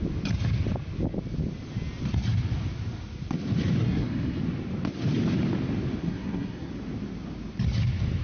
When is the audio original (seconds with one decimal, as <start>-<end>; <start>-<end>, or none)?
0.0-3.8; 4.4-6.0; 6.7-8.2